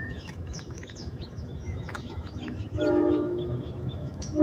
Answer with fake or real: fake